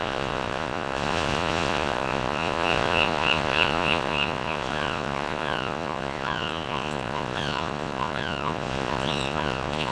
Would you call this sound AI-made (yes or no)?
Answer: yes